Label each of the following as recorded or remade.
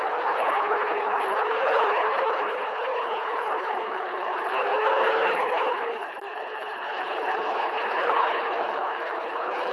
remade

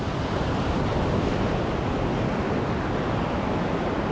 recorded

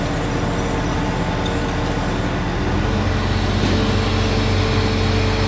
recorded